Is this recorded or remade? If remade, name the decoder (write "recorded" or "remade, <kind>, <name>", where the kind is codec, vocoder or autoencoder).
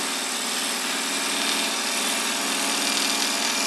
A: recorded